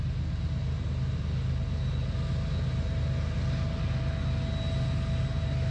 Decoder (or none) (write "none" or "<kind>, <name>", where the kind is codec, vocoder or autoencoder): none